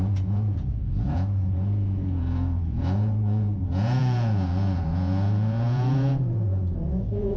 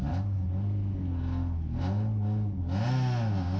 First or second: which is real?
second